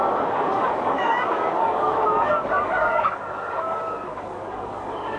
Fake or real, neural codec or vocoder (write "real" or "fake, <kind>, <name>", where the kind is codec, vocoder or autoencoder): fake, codec, DAC